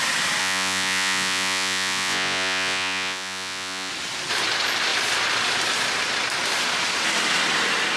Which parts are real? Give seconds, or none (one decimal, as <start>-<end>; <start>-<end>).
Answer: 0.0-0.4; 3.9-8.0